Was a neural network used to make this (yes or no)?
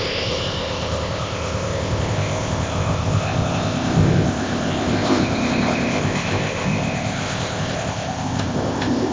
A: yes